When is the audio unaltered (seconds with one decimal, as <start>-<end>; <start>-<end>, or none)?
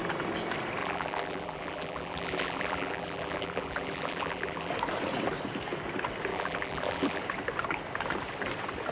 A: 0.0-0.8; 4.7-6.3; 7.2-8.9